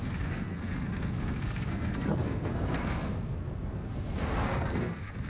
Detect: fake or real fake